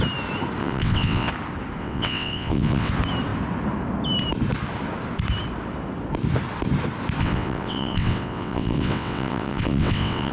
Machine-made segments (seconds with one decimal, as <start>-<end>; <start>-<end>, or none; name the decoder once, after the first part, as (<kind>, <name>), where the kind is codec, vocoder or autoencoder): 0.6-1.3 (vocoder, WaveNeXt); 1.8-2.9; 7.2-10.3